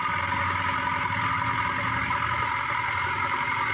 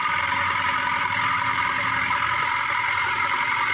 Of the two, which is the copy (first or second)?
second